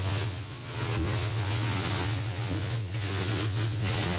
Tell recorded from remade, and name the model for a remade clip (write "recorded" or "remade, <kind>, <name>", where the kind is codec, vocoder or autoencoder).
remade, vocoder, Vocos